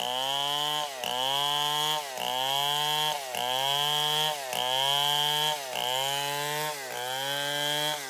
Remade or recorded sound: recorded